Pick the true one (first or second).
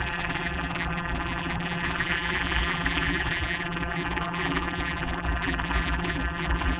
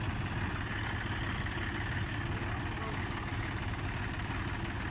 second